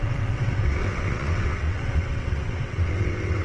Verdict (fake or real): fake